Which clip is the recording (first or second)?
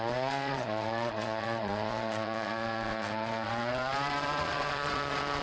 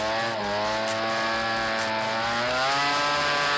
second